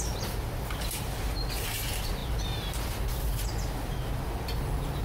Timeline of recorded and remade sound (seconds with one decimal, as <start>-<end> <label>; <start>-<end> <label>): 0.0-5.0 recorded